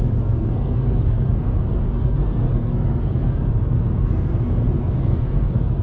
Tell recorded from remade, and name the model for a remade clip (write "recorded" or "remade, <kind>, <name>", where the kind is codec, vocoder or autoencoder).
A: remade, codec, SNAC